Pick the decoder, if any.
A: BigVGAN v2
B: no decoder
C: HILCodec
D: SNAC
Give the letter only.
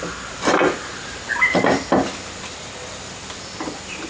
B